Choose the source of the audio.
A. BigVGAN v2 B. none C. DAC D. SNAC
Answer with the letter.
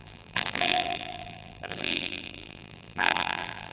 A